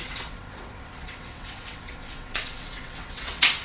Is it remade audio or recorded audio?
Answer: remade